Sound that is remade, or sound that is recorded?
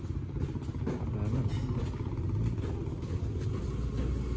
recorded